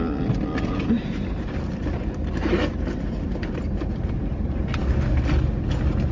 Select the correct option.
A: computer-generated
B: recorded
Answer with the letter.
B